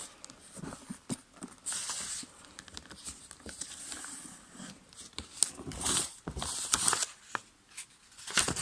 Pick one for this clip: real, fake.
real